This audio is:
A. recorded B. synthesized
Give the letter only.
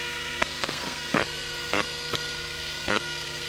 B